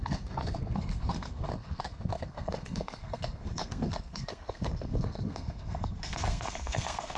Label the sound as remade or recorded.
remade